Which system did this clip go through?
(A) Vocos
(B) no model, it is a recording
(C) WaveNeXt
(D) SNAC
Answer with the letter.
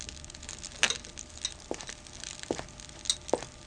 B